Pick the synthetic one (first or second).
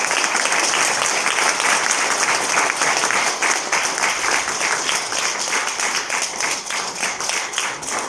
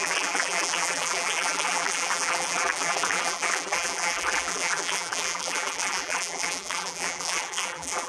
second